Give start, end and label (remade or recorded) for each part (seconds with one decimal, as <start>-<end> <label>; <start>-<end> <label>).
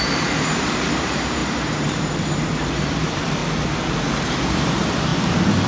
0.0-3.4 remade; 3.4-4.1 recorded; 4.1-5.7 remade